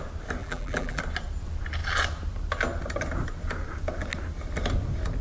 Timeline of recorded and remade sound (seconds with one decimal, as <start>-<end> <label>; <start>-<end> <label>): 0.0-0.4 recorded; 0.4-1.0 remade; 1.0-5.2 recorded